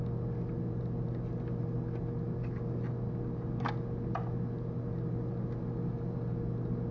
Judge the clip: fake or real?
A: real